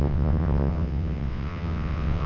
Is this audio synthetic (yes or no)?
yes